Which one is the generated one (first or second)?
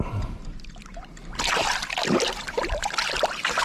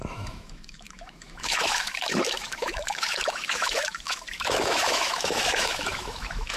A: second